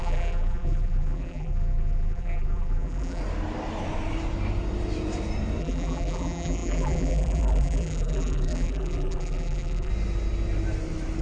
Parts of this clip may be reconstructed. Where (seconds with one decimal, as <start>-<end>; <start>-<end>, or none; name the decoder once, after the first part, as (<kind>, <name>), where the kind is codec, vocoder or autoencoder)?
0.0-3.2 (vocoder, BigVGAN v2); 5.6-9.9